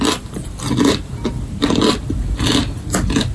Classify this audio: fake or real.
real